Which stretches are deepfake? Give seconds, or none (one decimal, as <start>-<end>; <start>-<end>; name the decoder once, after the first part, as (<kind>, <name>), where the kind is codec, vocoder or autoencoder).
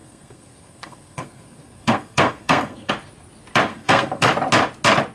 0.0-2.9 (codec, SNAC); 3.7-4.3